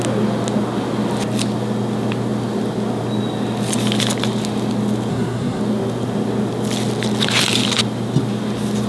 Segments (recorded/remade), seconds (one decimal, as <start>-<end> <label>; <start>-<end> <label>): 0.0-5.1 recorded; 5.1-5.6 remade; 5.6-8.9 recorded